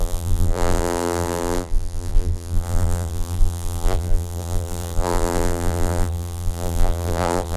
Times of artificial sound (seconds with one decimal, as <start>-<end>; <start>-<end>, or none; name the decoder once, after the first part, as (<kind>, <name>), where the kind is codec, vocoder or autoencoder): 0.0-7.6 (vocoder, BigVGAN v2)